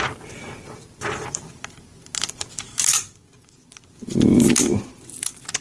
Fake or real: fake